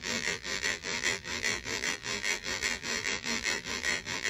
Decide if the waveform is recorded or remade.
remade